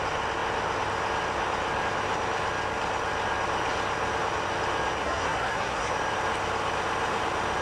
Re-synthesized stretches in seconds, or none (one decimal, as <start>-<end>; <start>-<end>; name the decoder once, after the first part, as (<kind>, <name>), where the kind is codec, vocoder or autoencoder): 5.0-5.9 (codec, SNAC)